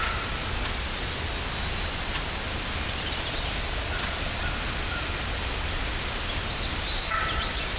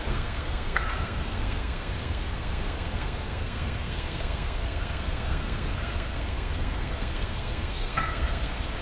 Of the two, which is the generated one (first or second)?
second